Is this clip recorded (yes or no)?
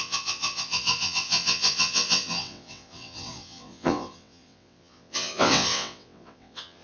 no